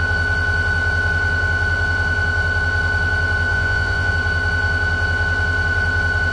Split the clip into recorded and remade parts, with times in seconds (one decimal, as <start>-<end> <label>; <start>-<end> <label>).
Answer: 0.0-3.5 recorded; 3.5-4.1 remade; 4.1-6.3 recorded